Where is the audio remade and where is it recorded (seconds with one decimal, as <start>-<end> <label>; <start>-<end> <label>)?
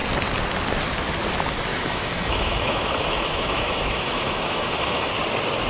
0.0-1.7 recorded; 1.7-5.1 remade; 5.1-5.7 recorded